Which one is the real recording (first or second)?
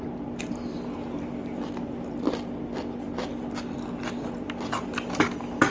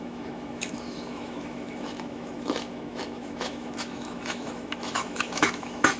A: first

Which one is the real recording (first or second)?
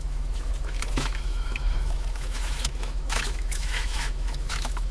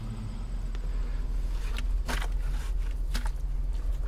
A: second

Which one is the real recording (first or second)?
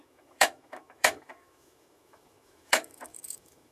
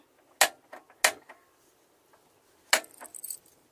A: second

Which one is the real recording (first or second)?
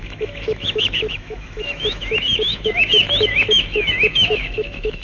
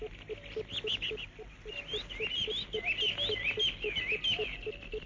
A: second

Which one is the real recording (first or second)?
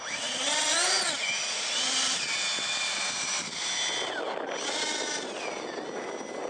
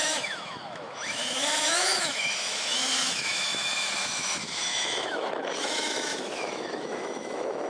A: first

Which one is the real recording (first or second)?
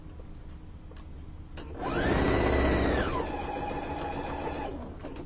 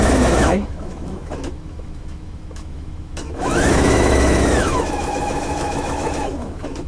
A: first